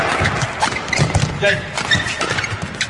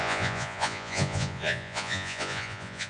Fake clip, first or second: second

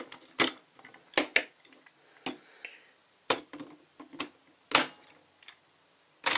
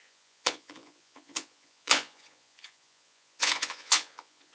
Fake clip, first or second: second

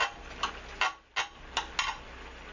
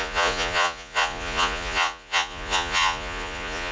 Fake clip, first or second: second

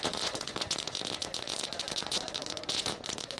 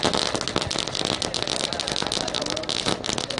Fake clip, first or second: first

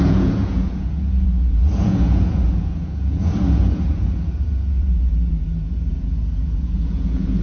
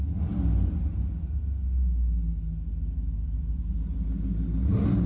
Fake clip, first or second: first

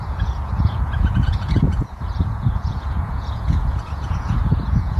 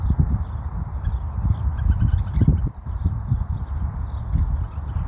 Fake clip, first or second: first